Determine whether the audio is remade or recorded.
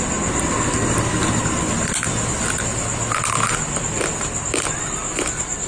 recorded